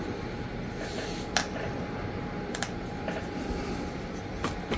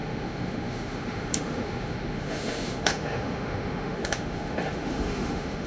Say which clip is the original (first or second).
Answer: first